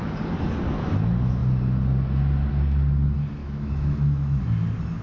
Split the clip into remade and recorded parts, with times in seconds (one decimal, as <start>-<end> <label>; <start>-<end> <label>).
0.0-3.4 recorded; 3.4-4.4 remade; 4.4-5.0 recorded